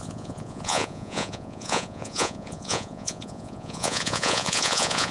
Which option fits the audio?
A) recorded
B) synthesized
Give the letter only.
B